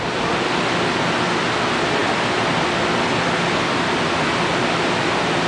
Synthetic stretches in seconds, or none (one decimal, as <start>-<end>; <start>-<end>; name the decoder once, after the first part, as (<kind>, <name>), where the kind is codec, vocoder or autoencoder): none